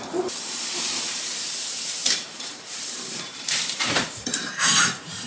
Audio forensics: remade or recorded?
remade